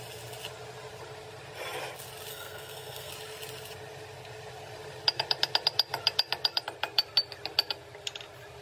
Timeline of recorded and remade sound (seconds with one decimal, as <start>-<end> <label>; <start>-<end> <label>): 0.0-2.3 recorded; 2.3-3.1 remade; 3.1-8.6 recorded